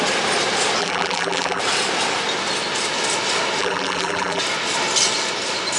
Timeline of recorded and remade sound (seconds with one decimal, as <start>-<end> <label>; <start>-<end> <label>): 0.0-0.8 recorded; 0.8-1.6 remade; 1.6-3.6 recorded; 3.6-4.4 remade; 4.4-5.8 recorded